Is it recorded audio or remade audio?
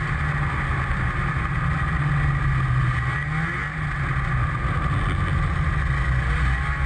recorded